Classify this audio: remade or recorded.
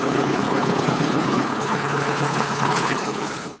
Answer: remade